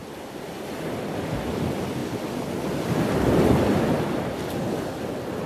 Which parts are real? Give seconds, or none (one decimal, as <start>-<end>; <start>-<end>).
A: 0.0-5.5